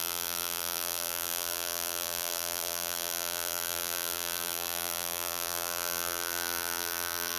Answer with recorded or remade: remade